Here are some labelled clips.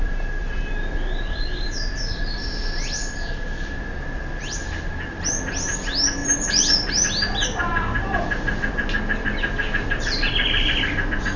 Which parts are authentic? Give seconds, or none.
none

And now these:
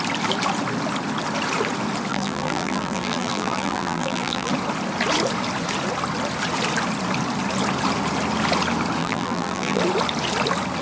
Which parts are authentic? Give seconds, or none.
0.0-2.1; 4.5-9.0; 9.8-10.8

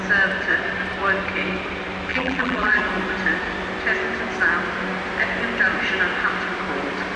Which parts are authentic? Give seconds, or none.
0.0-2.1; 2.8-7.2

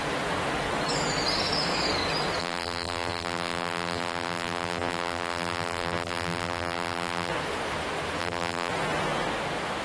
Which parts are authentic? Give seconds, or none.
0.0-2.4; 7.3-8.2; 8.7-9.8

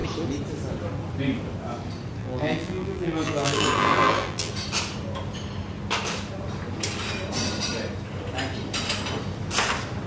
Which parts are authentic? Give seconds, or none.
0.0-2.2; 4.5-10.1